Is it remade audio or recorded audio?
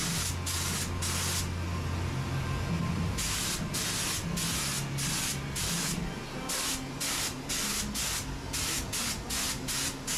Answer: recorded